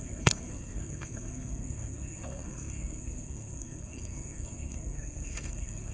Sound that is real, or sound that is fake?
fake